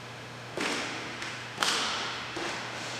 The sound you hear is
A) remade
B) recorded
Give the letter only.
A